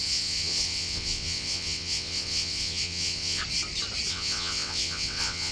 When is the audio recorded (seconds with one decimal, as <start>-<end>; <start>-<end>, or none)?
3.4-4.1